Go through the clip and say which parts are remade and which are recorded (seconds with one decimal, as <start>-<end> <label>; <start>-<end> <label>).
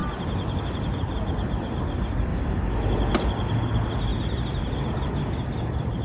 0.0-0.6 remade; 0.6-2.3 recorded; 2.3-2.8 remade; 2.8-6.0 recorded